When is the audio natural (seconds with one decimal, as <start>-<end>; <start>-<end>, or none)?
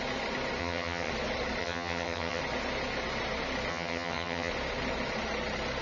0.0-0.6; 1.1-1.6; 2.4-3.7; 4.5-5.8